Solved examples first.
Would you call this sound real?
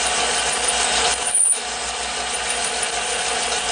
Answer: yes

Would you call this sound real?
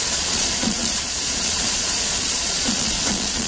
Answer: no